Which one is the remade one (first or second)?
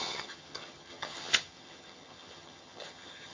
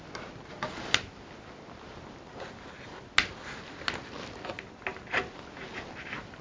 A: first